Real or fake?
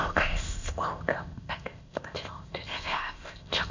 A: fake